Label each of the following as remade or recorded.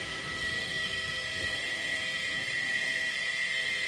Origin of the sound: remade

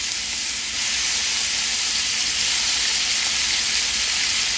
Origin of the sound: recorded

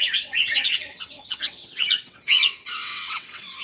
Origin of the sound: remade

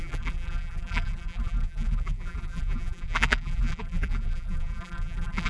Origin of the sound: remade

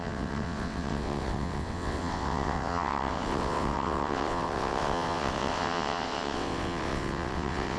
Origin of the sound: remade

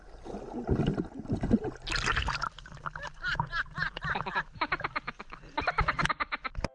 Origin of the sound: recorded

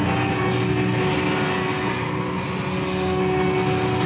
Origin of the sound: recorded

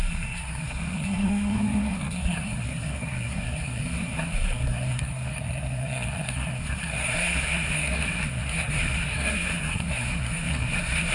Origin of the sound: remade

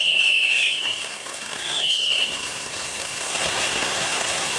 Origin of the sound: remade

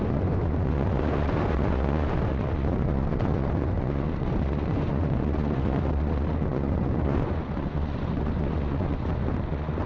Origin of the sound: remade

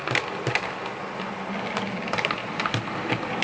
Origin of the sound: recorded